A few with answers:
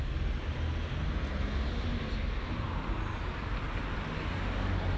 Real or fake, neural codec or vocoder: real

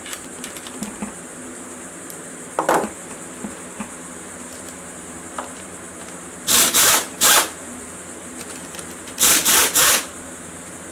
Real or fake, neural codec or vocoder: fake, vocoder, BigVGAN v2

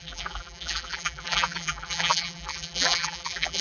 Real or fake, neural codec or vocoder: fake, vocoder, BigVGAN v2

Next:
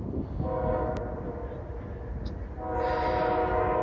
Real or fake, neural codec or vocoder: real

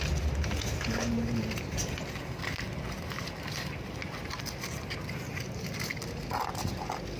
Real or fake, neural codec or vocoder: real